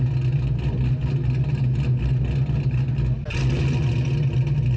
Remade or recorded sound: recorded